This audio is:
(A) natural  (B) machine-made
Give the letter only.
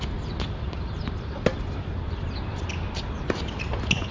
A